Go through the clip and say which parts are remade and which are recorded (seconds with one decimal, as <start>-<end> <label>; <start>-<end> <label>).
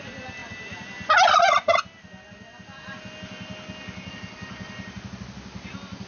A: 0.0-6.1 recorded